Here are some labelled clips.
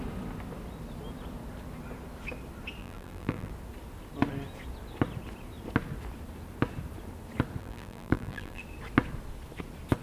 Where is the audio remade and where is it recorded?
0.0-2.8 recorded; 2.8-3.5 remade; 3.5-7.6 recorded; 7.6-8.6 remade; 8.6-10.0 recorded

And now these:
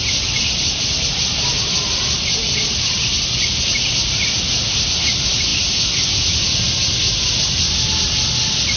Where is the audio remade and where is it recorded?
0.0-8.8 recorded

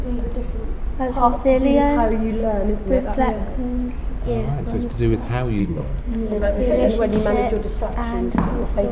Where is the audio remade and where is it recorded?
0.0-5.6 recorded; 5.6-6.9 remade; 6.9-8.9 recorded